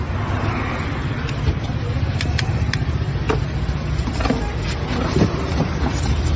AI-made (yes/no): no